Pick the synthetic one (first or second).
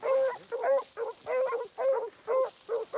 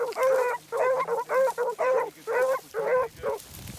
second